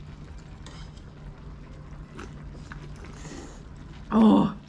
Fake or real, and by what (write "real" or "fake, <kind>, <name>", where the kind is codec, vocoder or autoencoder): real